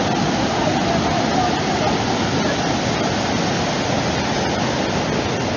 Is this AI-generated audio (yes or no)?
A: no